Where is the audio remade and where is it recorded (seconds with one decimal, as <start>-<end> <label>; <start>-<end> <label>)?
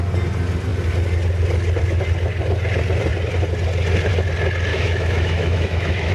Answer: 0.0-4.7 recorded; 4.7-6.1 remade